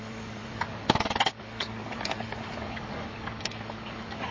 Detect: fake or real fake